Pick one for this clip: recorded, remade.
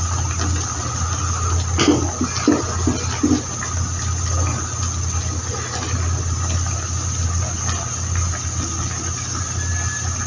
recorded